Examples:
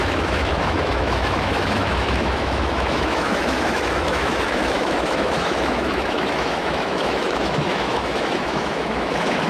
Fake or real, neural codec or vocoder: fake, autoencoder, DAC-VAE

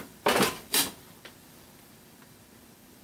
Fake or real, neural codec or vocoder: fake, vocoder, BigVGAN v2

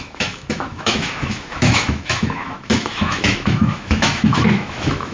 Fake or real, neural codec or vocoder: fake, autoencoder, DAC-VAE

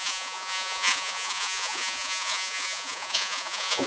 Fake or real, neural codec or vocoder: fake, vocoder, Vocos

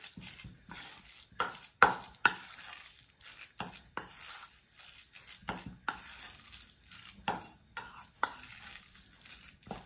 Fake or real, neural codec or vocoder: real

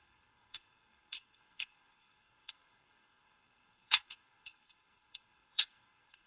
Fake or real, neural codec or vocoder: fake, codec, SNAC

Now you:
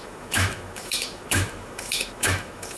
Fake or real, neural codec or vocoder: fake, autoencoder, DAC-VAE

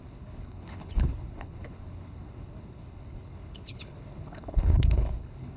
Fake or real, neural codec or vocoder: fake, codec, HILCodec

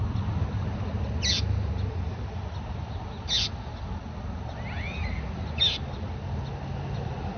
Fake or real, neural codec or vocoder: real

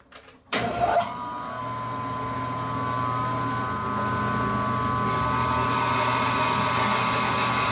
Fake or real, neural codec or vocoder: real